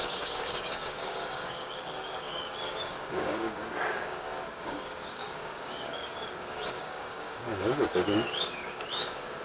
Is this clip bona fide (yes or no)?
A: no